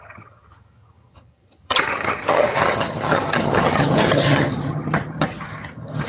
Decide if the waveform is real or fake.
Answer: fake